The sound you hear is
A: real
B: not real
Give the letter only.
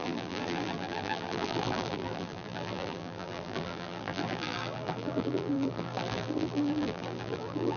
B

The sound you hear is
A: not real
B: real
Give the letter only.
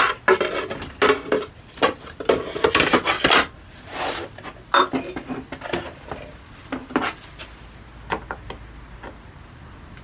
B